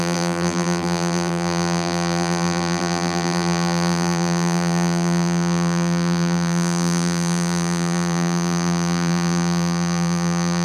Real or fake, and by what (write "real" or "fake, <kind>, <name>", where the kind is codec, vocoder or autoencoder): fake, vocoder, BigVGAN v2